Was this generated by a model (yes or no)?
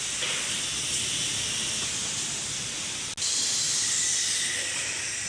no